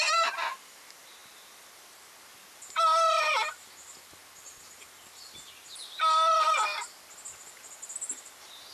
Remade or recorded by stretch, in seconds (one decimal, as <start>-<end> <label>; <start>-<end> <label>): 0.0-8.7 recorded